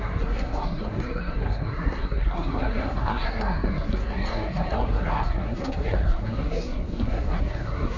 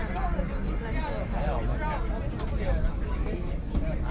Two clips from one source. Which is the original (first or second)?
second